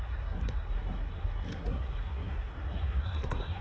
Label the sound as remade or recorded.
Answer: remade